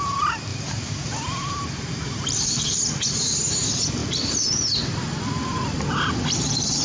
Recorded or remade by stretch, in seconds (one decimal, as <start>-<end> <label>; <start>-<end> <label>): 0.0-0.5 recorded; 0.5-2.8 remade; 2.8-6.8 recorded